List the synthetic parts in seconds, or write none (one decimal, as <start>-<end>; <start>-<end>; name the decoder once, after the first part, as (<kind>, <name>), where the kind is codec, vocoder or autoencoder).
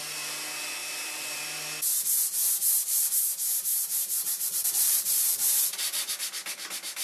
0.8-1.4 (vocoder, BigVGAN v2); 3.7-6.1